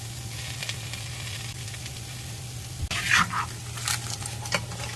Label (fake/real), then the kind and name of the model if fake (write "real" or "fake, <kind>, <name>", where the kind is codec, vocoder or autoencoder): real